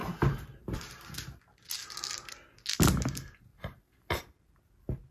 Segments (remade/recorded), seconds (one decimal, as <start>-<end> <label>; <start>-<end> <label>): 0.0-1.4 remade; 1.4-3.5 recorded; 3.5-4.2 remade; 4.2-5.1 recorded